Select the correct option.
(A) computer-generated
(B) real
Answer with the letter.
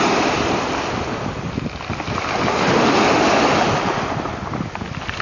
B